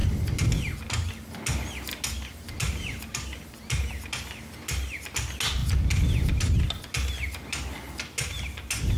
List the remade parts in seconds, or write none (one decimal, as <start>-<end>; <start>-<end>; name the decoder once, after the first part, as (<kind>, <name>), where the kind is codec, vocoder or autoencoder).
none